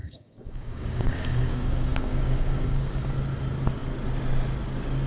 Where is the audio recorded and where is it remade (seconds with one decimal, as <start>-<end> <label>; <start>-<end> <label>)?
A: 0.0-3.1 remade; 3.1-5.1 recorded